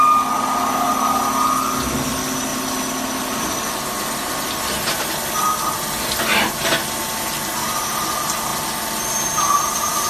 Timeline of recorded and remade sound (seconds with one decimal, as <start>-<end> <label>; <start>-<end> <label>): 0.0-10.1 recorded